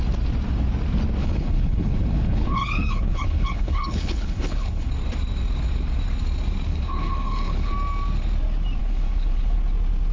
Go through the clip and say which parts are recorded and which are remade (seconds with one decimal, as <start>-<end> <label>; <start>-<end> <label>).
0.0-1.2 recorded; 1.2-4.9 remade; 4.9-6.7 recorded; 6.7-7.7 remade; 7.7-8.8 recorded; 8.8-9.6 remade; 9.6-10.1 recorded